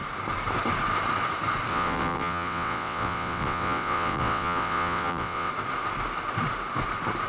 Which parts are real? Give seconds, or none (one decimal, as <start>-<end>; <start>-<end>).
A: 0.0-1.7; 5.5-7.3